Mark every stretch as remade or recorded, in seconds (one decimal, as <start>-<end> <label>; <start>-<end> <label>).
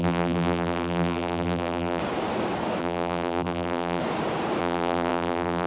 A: 0.0-2.0 remade; 2.0-2.8 recorded; 2.8-4.0 remade; 4.0-4.6 recorded; 4.6-5.7 remade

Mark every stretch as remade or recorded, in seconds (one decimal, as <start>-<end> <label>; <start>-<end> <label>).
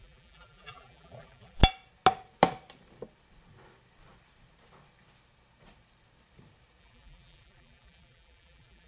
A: 0.0-1.6 remade; 1.6-6.8 recorded; 6.8-8.9 remade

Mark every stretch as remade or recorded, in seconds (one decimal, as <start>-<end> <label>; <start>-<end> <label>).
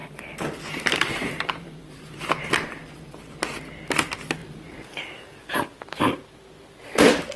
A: 0.0-3.4 remade; 3.4-4.4 recorded; 4.4-5.6 remade; 5.6-7.4 recorded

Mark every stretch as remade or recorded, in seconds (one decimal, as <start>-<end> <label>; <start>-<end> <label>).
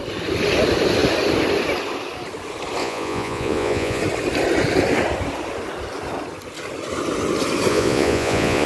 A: 0.0-2.8 recorded; 2.8-4.0 remade; 4.0-7.7 recorded; 7.7-8.7 remade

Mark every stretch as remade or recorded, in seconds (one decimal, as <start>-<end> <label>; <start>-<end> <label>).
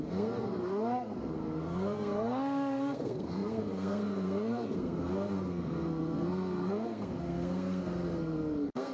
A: 0.0-8.9 remade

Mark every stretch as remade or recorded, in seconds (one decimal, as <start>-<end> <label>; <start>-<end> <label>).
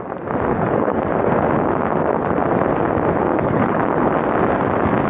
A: 0.0-0.5 recorded; 0.5-1.0 remade; 1.0-3.3 recorded; 3.3-3.8 remade; 3.8-5.1 recorded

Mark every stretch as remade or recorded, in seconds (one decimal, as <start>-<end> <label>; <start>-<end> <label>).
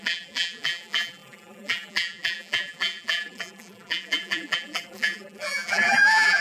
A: 0.0-6.4 remade